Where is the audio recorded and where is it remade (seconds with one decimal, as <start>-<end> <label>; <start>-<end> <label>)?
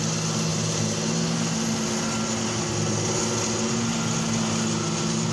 0.0-5.3 recorded